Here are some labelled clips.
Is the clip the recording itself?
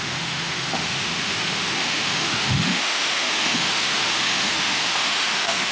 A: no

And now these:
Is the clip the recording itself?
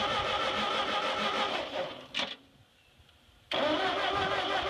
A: yes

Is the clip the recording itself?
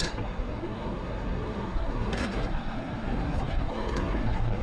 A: no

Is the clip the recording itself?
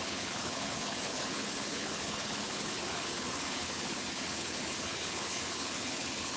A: no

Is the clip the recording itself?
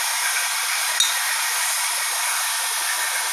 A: yes